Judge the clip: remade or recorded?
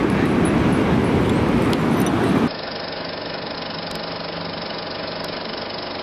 recorded